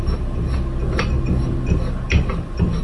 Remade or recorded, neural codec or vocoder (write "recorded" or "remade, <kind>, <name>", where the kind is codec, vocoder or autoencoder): recorded